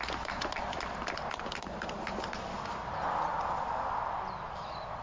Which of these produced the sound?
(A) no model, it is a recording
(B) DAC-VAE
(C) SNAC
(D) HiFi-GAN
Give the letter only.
A